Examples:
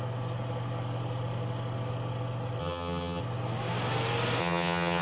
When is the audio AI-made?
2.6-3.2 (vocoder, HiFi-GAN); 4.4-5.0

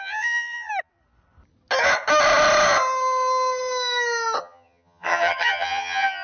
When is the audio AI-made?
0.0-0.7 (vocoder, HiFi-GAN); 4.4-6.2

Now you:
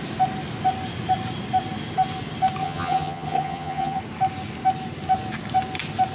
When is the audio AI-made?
2.6-4.0 (vocoder, HiFi-GAN)

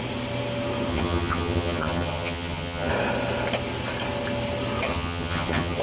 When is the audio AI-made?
0.9-2.9 (vocoder, HiFi-GAN); 4.9-5.8

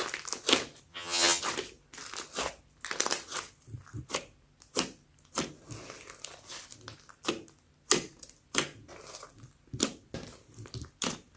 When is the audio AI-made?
0.9-1.4 (vocoder, HiFi-GAN)